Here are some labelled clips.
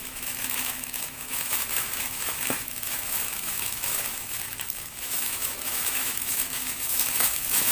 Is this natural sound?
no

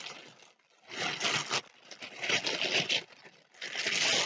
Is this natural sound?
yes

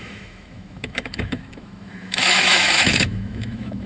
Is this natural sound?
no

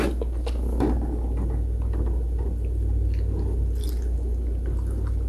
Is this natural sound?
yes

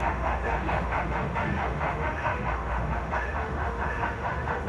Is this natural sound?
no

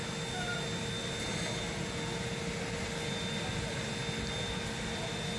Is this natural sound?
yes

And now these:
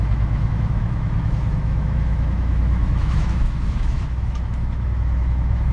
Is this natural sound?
no